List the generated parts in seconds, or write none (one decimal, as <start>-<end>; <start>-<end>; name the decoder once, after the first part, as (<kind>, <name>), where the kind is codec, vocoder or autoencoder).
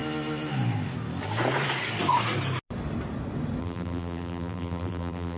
3.6-5.4 (vocoder, BigVGAN v2)